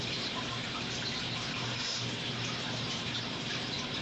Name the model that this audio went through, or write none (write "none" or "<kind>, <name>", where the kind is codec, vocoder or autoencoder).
vocoder, BigVGAN v2